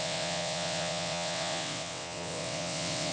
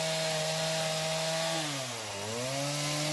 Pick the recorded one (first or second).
second